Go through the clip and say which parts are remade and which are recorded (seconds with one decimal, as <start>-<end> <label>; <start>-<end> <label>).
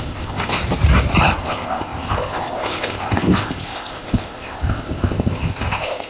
0.0-0.6 remade; 0.6-1.4 recorded; 1.4-6.1 remade